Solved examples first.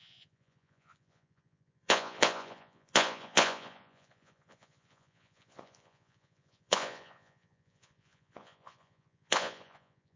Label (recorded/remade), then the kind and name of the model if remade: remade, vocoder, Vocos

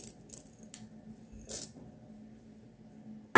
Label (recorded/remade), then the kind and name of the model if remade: recorded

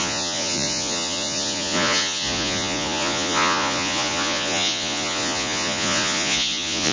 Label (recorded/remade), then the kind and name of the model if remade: remade, vocoder, Vocos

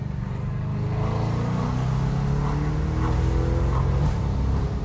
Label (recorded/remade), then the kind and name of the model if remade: recorded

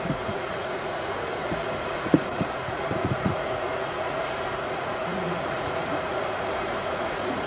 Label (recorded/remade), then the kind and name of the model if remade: remade, vocoder, Vocos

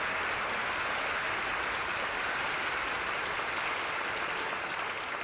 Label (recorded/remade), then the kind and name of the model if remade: recorded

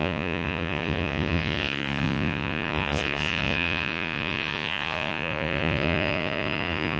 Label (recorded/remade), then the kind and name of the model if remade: remade, vocoder, Vocos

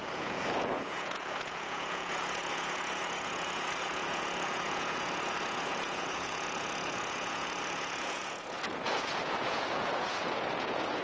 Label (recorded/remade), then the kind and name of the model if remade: remade, vocoder, Vocos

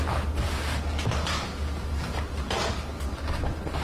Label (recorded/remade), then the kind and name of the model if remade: recorded